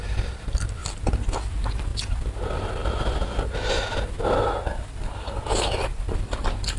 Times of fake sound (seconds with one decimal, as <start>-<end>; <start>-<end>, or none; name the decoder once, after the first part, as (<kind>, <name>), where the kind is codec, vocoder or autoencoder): 0.0-0.8 (vocoder, BigVGAN v2); 1.5-1.9; 2.4-2.8; 5.8-6.8